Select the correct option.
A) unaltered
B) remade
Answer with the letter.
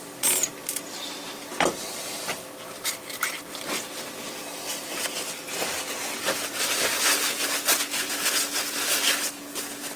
A